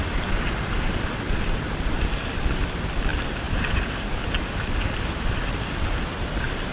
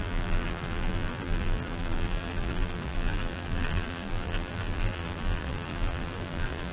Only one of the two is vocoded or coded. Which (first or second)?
second